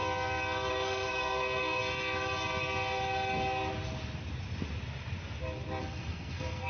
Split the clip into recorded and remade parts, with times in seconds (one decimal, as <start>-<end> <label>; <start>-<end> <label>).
0.0-0.7 recorded; 0.7-1.8 remade; 1.8-5.8 recorded; 5.8-6.7 remade